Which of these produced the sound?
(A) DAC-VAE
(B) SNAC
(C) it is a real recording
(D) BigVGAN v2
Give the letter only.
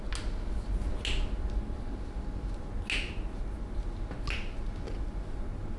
C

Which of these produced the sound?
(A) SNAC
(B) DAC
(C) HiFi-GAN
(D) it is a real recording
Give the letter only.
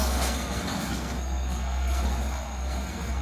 A